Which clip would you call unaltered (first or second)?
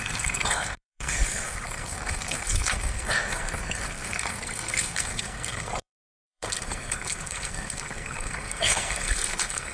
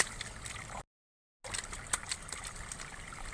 second